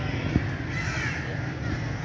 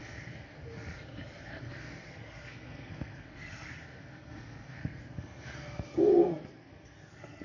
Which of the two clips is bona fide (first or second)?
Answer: first